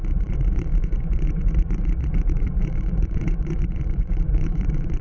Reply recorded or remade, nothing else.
remade